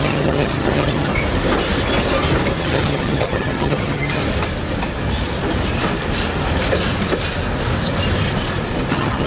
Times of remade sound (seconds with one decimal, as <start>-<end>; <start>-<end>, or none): 0.0-1.1; 2.6-4.2; 8.9-9.3